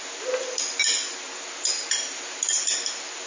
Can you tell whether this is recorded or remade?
recorded